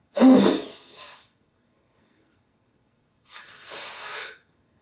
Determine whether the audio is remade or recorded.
remade